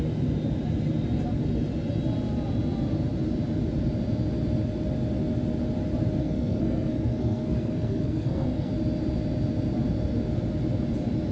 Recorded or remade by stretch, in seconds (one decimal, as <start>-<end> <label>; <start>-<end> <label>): 0.0-6.2 recorded; 6.2-8.7 remade; 8.7-11.3 recorded